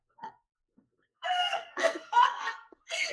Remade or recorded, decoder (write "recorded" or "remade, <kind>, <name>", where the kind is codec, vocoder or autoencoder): remade, codec, SNAC